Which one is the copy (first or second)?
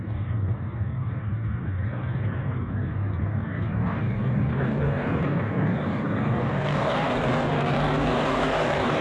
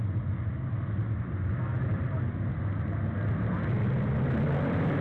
first